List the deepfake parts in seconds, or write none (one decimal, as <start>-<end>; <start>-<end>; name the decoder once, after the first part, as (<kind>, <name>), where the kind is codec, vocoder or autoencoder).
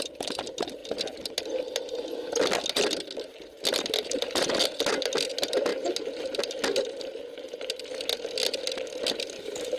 none